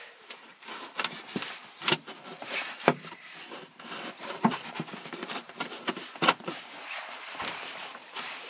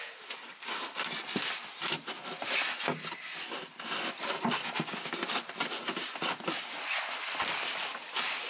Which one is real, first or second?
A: second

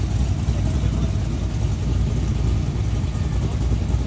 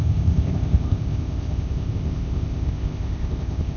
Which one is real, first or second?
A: first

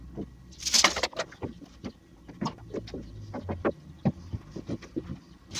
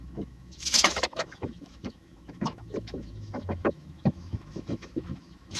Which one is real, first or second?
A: first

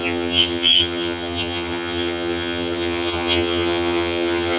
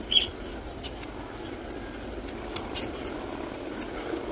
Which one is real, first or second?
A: second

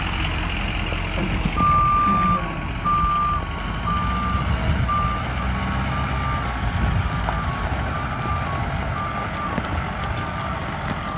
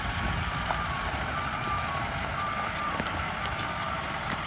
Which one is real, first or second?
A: first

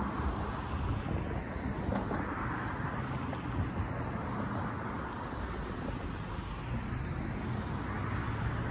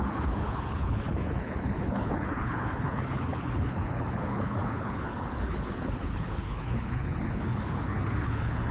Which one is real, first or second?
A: first